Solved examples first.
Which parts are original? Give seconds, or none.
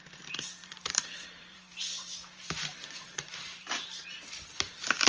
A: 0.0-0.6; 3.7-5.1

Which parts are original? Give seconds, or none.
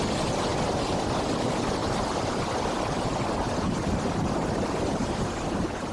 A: 0.0-5.9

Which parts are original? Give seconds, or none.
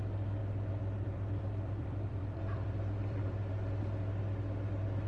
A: 0.0-0.4; 3.5-5.1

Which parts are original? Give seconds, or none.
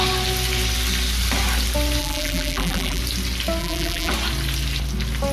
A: 0.0-2.0; 3.0-3.6; 4.1-5.3